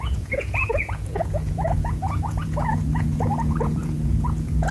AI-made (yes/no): yes